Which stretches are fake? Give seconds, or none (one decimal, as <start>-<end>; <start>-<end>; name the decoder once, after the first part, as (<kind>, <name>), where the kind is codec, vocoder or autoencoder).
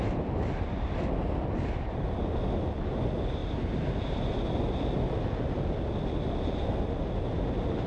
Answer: none